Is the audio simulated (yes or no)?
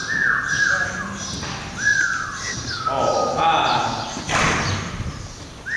no